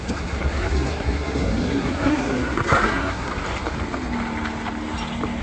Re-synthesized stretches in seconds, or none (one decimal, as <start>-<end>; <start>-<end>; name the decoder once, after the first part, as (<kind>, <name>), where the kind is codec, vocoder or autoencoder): 0.0-3.3 (codec, SNAC)